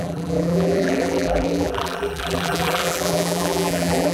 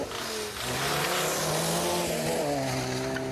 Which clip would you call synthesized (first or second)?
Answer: first